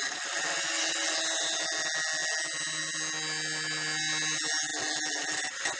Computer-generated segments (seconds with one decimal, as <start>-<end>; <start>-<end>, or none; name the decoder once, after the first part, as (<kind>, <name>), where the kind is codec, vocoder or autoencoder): none